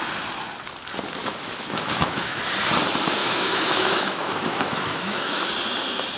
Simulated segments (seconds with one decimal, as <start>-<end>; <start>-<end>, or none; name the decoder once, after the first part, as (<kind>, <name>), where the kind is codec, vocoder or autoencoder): 1.2-2.4 (autoencoder, DAC-VAE); 3.2-5.5